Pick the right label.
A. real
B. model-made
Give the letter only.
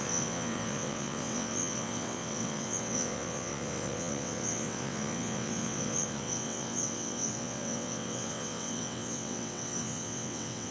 B